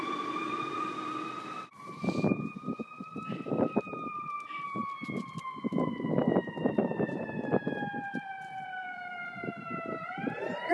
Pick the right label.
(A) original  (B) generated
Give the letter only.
B